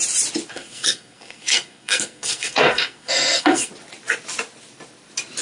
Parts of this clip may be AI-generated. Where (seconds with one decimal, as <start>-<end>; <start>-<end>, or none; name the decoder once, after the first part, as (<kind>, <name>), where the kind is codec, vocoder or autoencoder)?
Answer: 0.5-3.7 (codec, SNAC)